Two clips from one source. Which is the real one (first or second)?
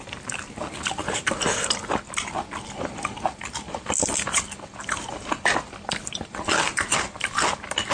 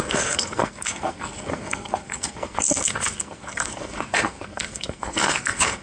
first